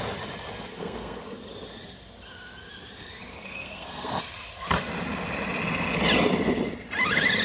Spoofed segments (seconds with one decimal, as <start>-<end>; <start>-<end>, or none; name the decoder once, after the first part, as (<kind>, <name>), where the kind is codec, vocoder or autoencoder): 0.7-1.2 (codec, SNAC); 3.3-4.2

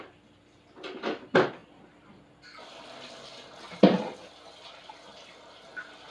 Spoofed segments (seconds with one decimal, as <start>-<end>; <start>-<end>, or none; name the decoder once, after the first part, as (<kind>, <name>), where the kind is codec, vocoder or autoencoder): none

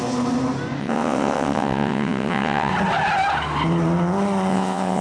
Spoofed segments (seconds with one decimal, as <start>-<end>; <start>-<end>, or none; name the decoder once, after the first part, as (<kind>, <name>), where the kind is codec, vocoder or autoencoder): 0.8-2.7 (vocoder, WaveNeXt); 4.5-5.0

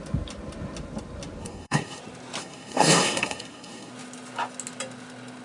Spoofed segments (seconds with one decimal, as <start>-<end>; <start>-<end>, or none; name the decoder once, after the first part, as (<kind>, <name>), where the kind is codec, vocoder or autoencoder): 1.4-2.0 (codec, SNAC); 2.4-3.9

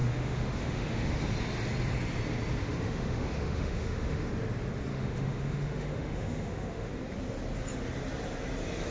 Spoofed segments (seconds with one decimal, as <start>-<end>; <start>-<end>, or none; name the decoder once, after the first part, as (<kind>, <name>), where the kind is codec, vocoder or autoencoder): 0.0-1.2 (autoencoder, DAC-VAE); 2.6-4.3; 4.9-6.9

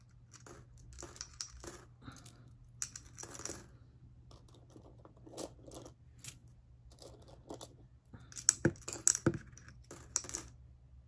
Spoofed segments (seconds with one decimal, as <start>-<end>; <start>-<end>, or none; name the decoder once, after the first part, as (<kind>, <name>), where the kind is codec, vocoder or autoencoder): none

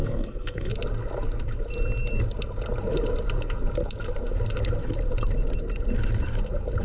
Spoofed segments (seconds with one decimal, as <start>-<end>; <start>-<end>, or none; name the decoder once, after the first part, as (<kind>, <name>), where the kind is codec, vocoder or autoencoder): 0.0-0.7 (codec, SNAC)